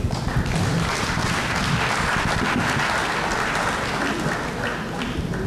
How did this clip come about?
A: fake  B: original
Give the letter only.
B